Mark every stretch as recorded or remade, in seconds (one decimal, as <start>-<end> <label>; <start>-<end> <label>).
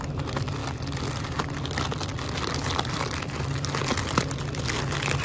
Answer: 0.0-2.1 recorded; 2.1-3.8 remade; 3.8-5.2 recorded